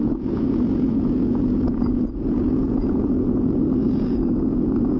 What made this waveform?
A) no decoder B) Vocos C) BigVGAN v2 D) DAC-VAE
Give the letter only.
B